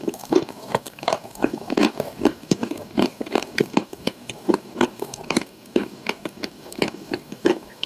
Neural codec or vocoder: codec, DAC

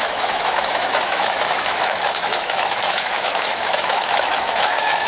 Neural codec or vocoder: autoencoder, DAC-VAE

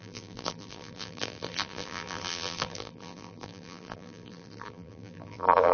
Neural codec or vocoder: vocoder, BigVGAN v2